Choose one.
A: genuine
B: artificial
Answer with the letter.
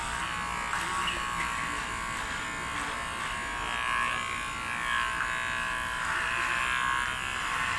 A